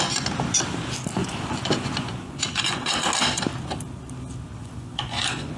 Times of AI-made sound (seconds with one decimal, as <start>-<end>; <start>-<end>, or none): 1.2-3.1; 4.6-5.6